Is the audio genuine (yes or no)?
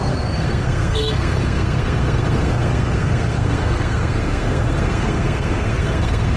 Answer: no